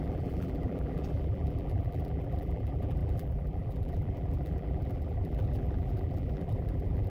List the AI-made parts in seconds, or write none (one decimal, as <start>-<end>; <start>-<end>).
0.0-7.1